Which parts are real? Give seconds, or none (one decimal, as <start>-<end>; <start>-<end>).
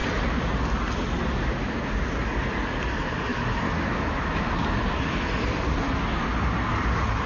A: 0.0-3.3; 4.5-7.3